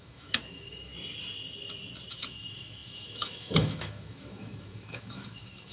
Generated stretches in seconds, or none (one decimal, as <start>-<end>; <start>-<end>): 0.0-0.9; 2.1-5.7